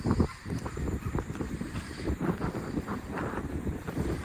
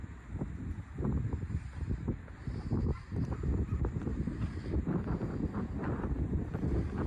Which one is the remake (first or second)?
first